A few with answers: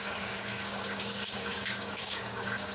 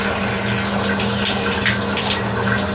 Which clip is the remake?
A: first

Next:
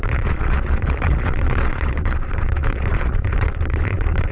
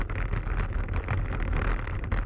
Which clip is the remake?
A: first